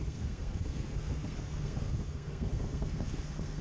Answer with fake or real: fake